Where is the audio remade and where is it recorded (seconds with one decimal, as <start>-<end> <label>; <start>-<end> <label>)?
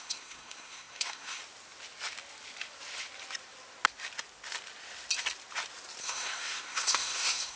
0.0-1.4 remade; 1.4-6.0 recorded; 6.0-7.6 remade